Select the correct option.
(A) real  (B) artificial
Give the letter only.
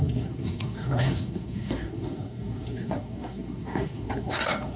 B